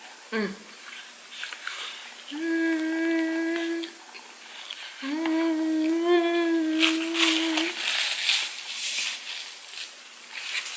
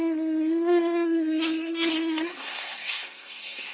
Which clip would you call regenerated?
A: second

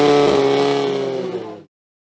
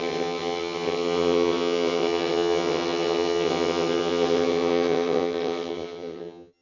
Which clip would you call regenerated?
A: second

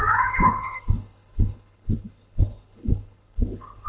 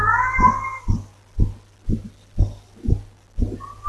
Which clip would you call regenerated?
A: first